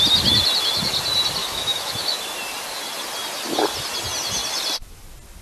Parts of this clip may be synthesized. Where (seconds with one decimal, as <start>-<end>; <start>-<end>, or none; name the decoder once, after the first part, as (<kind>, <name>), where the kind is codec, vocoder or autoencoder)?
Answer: 1.4-2.2 (autoencoder, DAC-VAE)